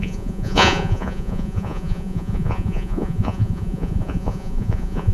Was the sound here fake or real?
fake